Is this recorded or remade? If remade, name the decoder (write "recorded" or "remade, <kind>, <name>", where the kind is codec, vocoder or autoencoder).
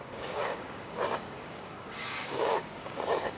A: remade, codec, DAC